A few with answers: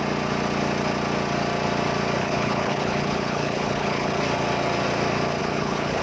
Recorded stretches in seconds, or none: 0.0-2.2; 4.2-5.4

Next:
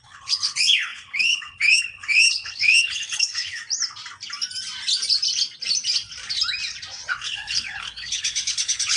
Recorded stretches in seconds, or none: 3.6-7.1